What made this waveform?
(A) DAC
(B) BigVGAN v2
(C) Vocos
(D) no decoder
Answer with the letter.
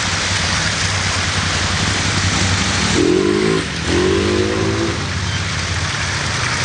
D